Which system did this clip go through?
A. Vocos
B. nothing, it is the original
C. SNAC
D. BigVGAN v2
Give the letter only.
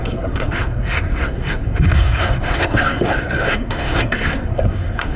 C